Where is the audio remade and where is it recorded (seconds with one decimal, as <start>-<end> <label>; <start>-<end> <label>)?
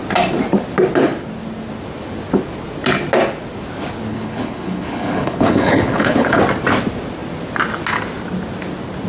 0.0-4.1 recorded; 4.1-6.4 remade; 6.4-9.1 recorded